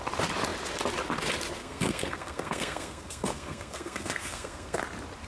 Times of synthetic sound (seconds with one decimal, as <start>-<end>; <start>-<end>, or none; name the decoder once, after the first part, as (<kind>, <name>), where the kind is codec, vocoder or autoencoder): 1.6-4.8 (codec, SNAC)